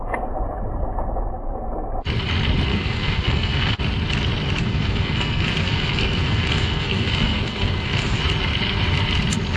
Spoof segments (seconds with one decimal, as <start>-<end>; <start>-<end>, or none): 2.7-3.8; 4.6-8.2